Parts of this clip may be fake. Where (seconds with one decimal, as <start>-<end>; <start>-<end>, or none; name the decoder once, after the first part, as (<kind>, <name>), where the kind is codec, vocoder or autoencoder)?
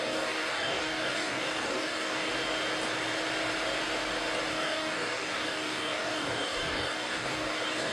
0.0-2.3 (codec, DAC); 4.5-7.9